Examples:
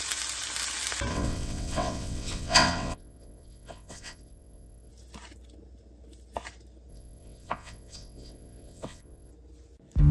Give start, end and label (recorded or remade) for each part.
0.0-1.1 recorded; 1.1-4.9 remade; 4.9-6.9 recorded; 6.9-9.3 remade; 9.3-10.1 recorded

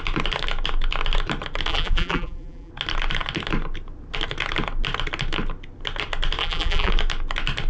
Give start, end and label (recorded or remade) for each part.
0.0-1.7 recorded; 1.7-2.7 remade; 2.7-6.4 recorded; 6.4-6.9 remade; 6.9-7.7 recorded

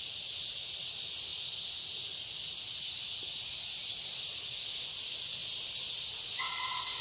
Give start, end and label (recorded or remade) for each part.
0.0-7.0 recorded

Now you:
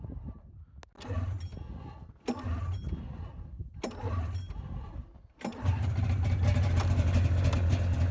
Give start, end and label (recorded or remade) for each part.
0.0-8.1 recorded